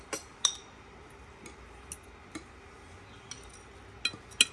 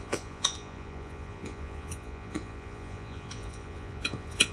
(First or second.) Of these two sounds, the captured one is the first